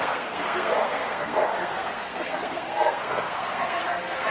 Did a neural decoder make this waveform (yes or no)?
yes